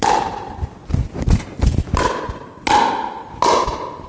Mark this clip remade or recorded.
recorded